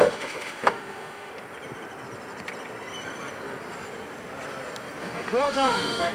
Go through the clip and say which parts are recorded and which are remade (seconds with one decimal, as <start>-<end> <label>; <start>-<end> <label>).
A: 0.0-1.3 remade; 1.3-5.0 recorded; 5.0-6.1 remade